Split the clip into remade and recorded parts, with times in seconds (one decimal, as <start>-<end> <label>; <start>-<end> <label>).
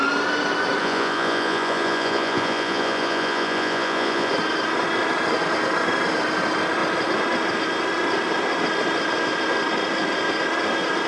0.0-0.8 recorded; 0.8-4.3 remade; 4.3-11.1 recorded